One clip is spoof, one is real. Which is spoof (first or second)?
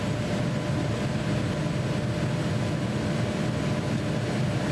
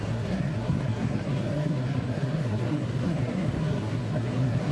second